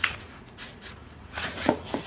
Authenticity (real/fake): fake